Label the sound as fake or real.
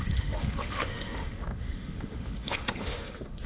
fake